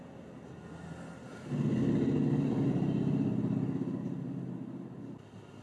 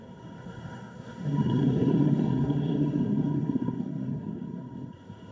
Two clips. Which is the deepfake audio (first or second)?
second